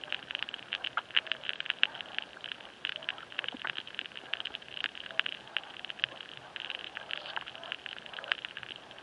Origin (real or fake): real